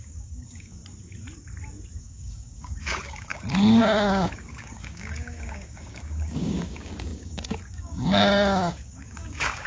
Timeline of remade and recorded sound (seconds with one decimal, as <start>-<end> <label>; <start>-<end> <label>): 0.0-0.8 remade; 0.8-2.0 recorded; 2.0-9.7 remade